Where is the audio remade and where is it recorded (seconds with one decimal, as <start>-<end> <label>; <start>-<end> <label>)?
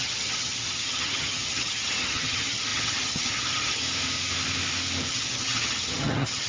0.0-3.8 remade; 3.8-5.1 recorded; 5.1-6.5 remade